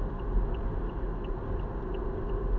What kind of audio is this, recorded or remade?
recorded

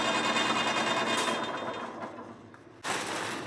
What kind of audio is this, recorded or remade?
recorded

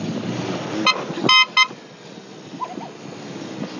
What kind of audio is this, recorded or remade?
recorded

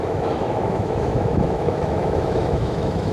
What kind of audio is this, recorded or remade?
remade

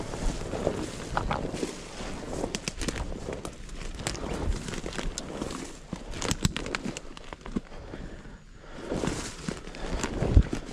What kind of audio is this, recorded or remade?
recorded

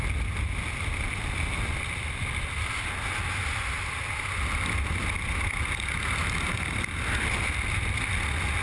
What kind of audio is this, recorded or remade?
recorded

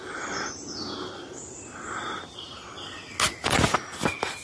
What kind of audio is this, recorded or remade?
recorded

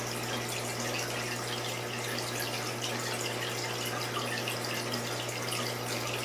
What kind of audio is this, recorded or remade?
recorded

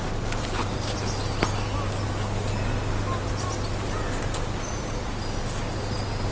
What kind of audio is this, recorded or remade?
recorded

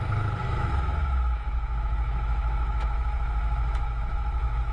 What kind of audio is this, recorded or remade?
remade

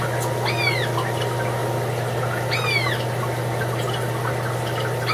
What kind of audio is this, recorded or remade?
recorded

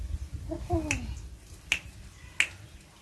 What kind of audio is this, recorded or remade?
recorded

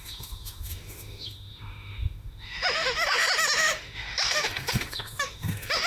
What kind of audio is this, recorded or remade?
remade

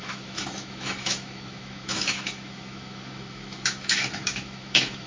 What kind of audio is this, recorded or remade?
remade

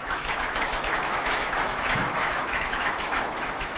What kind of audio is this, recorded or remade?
remade